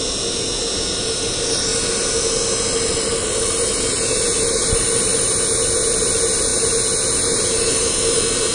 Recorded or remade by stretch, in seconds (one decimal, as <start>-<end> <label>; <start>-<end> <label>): 0.0-1.7 remade; 1.7-3.0 recorded; 3.0-5.1 remade; 5.1-6.0 recorded; 6.0-6.5 remade; 6.5-7.1 recorded; 7.1-8.5 remade